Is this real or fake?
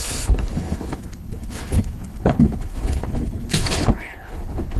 fake